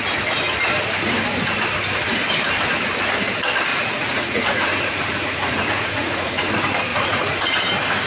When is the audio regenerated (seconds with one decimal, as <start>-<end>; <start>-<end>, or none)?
3.7-6.5; 6.9-7.6